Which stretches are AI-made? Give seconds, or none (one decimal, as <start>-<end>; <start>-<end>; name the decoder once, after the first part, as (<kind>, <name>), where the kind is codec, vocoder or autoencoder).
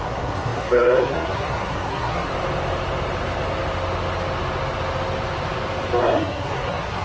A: 0.0-2.3 (codec, SNAC); 6.0-7.0